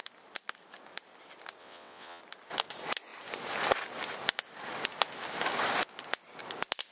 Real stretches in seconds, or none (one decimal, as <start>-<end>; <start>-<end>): 0.0-1.6; 2.2-6.9